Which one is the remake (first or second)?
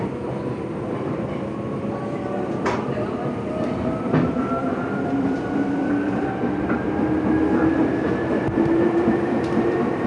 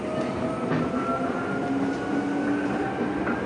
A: first